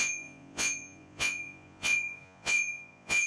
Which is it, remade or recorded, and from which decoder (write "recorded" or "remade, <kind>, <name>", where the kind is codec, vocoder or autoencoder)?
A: remade, vocoder, Vocos